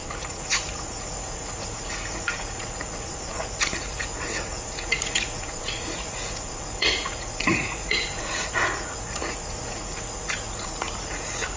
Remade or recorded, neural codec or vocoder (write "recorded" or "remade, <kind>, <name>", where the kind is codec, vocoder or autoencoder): remade, vocoder, Vocos